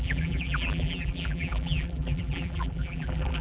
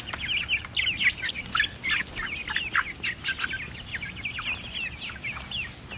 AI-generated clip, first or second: first